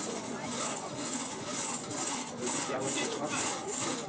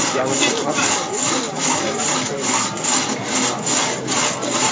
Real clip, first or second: second